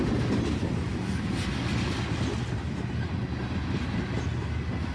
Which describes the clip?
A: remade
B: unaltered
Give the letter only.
B